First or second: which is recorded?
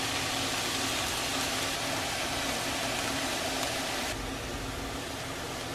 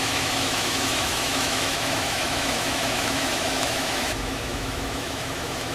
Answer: first